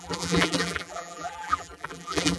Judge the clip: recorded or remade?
remade